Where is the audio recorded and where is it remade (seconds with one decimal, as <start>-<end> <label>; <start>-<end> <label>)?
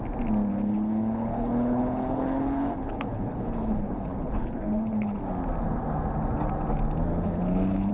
0.0-0.5 recorded; 0.5-5.2 remade; 5.2-7.1 recorded; 7.1-7.9 remade